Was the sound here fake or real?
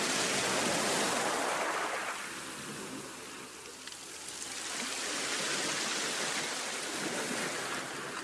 real